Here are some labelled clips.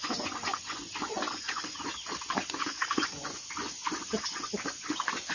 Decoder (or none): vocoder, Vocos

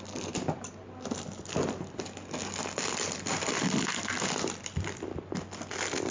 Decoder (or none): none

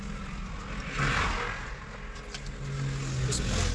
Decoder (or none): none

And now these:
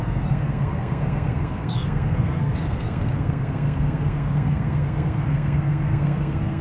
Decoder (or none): codec, SNAC